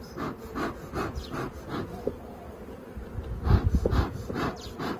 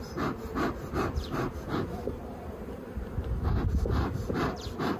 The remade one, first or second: second